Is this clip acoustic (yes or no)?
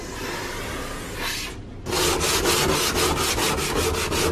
yes